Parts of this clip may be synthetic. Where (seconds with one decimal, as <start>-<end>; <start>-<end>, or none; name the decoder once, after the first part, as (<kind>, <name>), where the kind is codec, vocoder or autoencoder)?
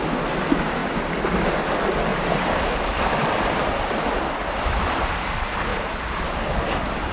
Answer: 2.1-5.0 (vocoder, BigVGAN v2)